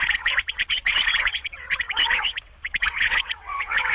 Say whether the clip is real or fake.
fake